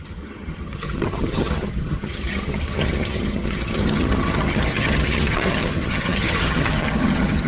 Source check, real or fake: fake